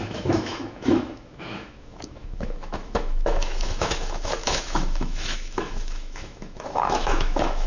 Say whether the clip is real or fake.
fake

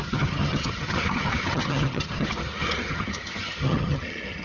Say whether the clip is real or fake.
fake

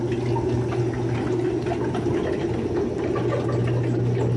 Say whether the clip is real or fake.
real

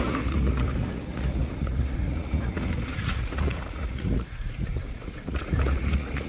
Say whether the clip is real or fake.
fake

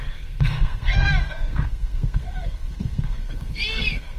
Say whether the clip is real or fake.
fake